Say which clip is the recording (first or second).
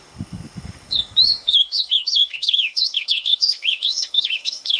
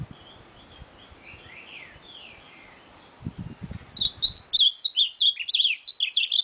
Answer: second